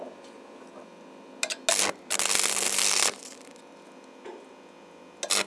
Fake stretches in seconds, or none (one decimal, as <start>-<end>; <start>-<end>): none